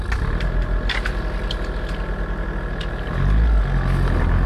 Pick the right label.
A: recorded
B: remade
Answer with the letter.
A